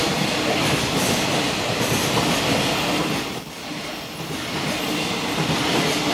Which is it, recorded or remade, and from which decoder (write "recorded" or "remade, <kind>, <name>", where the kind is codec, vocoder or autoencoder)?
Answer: recorded